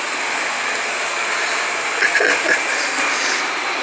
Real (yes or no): yes